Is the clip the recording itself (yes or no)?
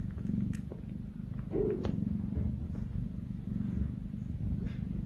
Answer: yes